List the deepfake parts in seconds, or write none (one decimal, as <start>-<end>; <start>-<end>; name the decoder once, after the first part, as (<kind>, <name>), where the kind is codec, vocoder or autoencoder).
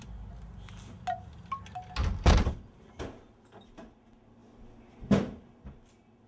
none